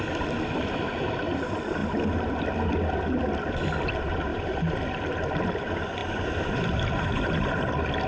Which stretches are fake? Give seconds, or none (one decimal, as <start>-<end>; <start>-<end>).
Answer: 0.0-1.8; 3.9-8.1